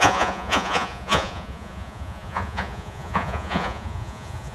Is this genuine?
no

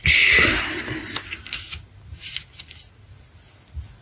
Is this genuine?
yes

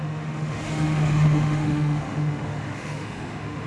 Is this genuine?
no